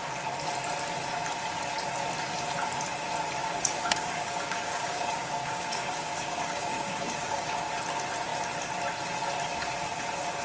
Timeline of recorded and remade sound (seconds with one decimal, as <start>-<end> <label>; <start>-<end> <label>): 0.0-3.4 recorded; 3.4-7.7 remade; 7.7-10.4 recorded